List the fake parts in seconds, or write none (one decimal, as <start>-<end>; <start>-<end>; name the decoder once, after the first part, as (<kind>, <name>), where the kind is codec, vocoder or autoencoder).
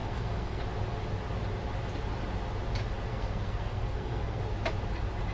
0.0-0.6 (codec, SNAC); 3.1-4.4